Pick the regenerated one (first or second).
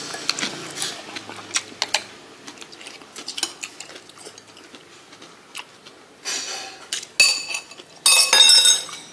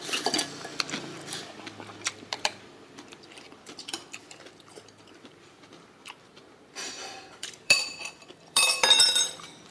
second